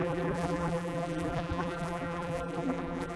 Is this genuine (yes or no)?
no